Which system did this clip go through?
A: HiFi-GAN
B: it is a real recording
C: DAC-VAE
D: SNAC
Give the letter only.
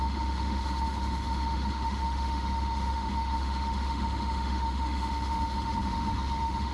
C